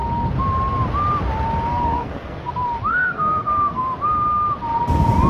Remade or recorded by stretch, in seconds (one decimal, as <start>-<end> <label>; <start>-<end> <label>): 0.0-1.7 recorded; 1.7-2.5 remade; 2.5-2.9 recorded; 2.9-3.8 remade; 3.8-5.3 recorded